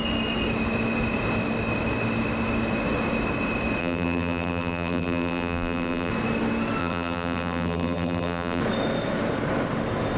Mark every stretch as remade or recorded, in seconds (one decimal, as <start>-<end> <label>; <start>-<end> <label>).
0.0-3.8 recorded; 3.8-6.1 remade; 6.1-6.8 recorded; 6.8-8.6 remade; 8.6-10.2 recorded